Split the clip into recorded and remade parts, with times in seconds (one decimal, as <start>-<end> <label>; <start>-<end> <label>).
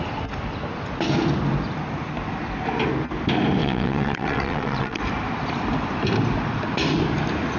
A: 0.0-3.6 recorded; 3.6-5.0 remade; 5.0-7.6 recorded